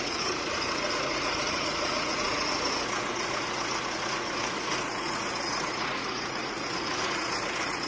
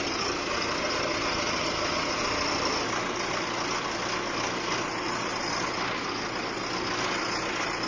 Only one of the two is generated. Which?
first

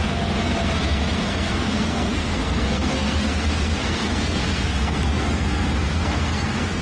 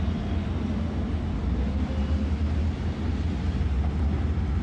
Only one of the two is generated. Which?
first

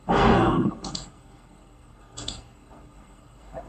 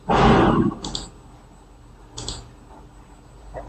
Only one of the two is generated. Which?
first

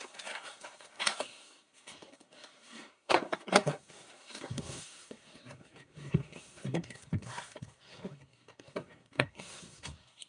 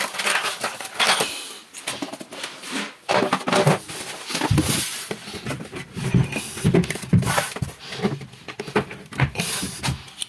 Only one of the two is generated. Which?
first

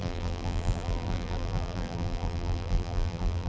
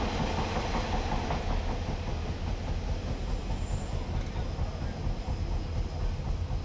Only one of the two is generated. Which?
first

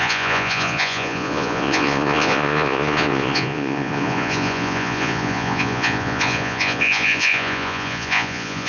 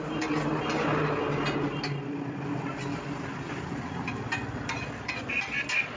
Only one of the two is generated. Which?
first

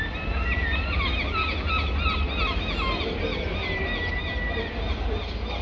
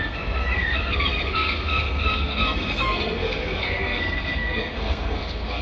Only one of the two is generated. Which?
second